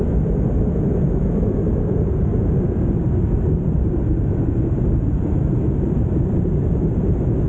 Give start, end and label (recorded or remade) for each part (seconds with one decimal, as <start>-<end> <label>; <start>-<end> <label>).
0.0-7.5 recorded